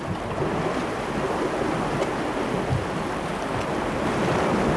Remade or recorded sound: recorded